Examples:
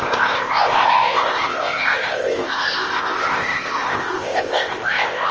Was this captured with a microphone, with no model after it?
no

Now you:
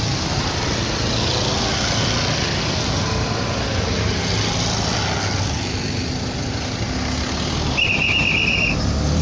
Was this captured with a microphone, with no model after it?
yes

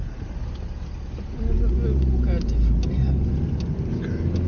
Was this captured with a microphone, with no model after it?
yes